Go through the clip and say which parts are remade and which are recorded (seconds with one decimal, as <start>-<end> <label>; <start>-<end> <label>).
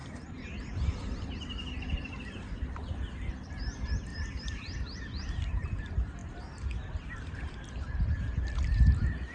0.0-1.0 recorded; 1.0-9.3 remade